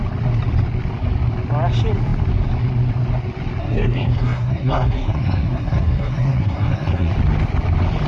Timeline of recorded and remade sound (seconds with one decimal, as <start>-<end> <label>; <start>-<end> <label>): 0.0-3.6 recorded; 3.6-7.1 remade; 7.1-8.1 recorded